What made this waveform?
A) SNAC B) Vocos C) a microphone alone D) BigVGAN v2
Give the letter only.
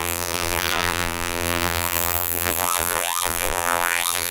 D